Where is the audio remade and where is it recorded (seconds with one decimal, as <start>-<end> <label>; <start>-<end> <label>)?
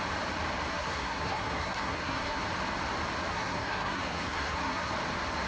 0.0-0.7 recorded; 0.7-2.4 remade; 2.4-3.3 recorded; 3.3-4.9 remade; 4.9-5.5 recorded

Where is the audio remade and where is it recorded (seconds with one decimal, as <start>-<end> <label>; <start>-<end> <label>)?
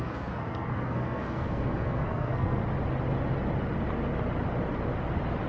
0.0-2.6 remade; 2.6-5.5 recorded